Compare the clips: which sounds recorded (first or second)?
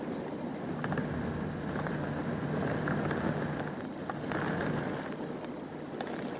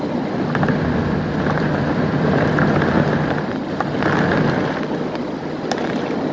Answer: first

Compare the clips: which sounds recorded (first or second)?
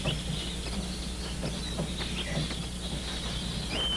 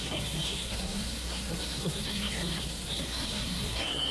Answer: first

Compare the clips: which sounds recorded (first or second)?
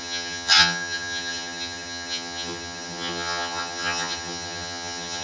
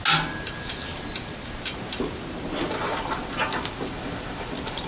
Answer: second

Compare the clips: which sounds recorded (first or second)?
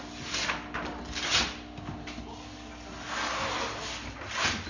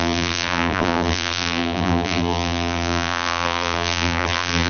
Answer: first